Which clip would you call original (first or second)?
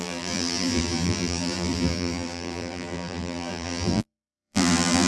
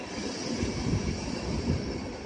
second